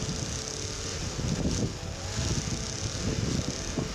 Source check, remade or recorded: recorded